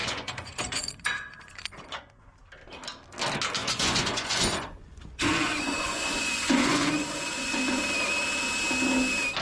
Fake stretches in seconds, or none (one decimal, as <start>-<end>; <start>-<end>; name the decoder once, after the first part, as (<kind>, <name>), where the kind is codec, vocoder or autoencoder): 0.0-2.3 (vocoder, Vocos); 3.6-7.6